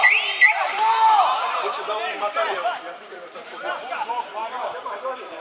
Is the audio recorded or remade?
remade